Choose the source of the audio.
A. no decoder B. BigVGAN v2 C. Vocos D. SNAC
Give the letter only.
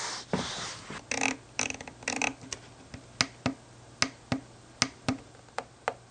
A